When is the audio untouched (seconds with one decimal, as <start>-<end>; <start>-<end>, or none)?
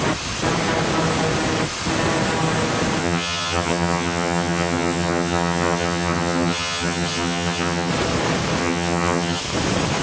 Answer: 0.0-3.0; 7.9-8.6; 9.4-10.0